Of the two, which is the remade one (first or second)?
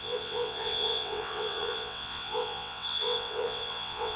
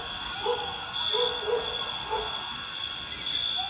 first